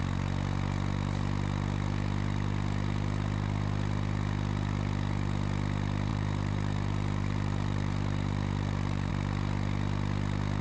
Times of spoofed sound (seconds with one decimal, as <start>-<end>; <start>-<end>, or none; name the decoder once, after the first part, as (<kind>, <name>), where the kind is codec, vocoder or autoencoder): 6.1-9.1 (vocoder, BigVGAN v2)